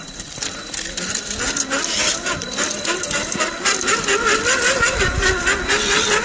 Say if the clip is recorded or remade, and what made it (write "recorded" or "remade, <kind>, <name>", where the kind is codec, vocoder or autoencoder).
recorded